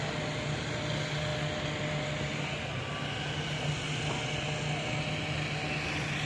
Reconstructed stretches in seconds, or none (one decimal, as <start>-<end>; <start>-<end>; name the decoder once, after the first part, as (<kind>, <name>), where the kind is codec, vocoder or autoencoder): none